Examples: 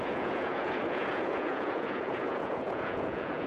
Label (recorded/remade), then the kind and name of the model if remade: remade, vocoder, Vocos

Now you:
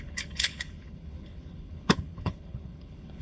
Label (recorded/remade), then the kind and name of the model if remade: remade, codec, HILCodec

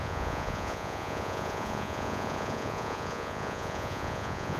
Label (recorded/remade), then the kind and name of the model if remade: remade, vocoder, Vocos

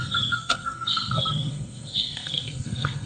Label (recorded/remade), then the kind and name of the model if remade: remade, codec, SNAC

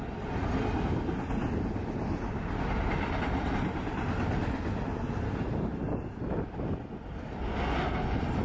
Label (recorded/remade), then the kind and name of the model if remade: recorded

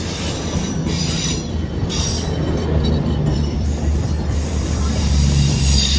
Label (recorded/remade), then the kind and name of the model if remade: remade, vocoder, BigVGAN v2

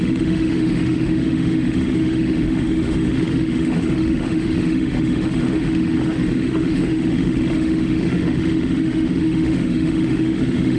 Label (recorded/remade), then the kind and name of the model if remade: remade, autoencoder, DAC-VAE